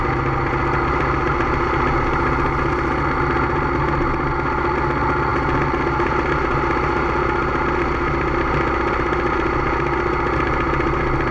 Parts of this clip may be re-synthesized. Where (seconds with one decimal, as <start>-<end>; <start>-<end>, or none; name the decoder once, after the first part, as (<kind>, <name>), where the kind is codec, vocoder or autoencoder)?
none